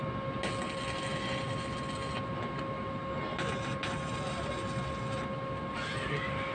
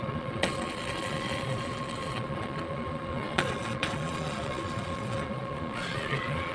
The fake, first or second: second